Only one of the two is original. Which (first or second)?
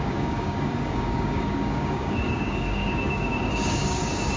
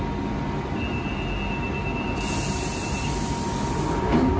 second